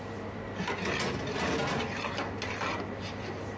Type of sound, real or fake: real